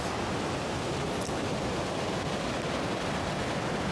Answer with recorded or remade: recorded